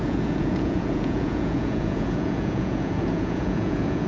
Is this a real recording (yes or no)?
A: no